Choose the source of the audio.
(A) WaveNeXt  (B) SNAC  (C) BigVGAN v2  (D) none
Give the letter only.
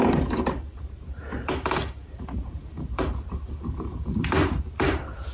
C